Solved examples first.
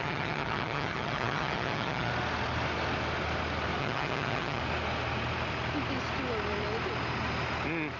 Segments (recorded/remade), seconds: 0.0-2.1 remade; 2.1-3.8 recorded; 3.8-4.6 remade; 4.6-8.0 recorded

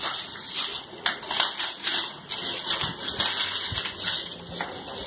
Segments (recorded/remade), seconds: 0.0-5.1 recorded

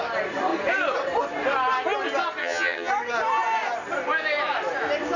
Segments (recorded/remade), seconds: 0.0-2.4 recorded; 2.4-2.9 remade; 2.9-5.2 recorded

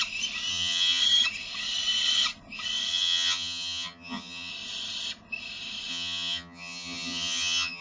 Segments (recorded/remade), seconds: 0.0-0.5 recorded; 0.5-1.0 remade; 1.0-2.9 recorded; 2.9-4.5 remade; 4.5-5.9 recorded; 5.9-7.8 remade

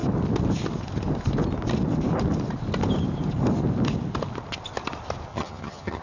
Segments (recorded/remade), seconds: 0.0-5.3 recorded; 5.3-6.0 remade

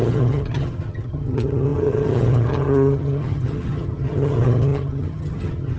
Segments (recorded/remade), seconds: 0.0-5.8 remade

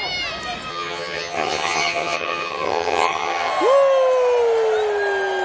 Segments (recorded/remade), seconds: 0.0-0.7 recorded; 0.7-3.5 remade; 3.5-5.4 recorded